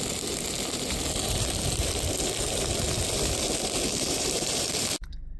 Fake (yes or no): yes